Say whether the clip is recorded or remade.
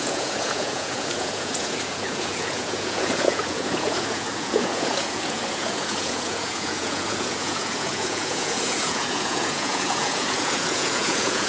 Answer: remade